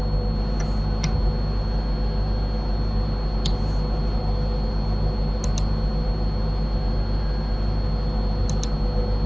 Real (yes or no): yes